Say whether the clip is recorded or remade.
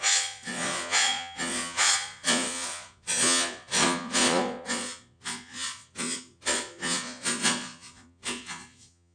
remade